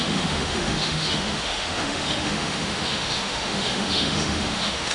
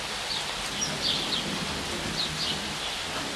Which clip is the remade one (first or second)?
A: first